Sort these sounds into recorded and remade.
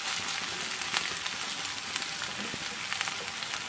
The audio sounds recorded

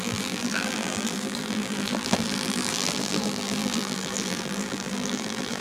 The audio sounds remade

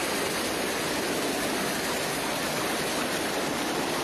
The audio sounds recorded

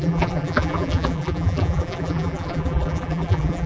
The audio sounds remade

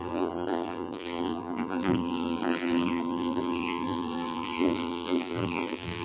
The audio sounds remade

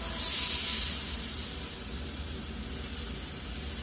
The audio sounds recorded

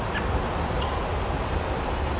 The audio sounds recorded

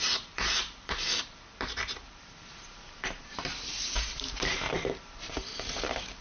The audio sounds remade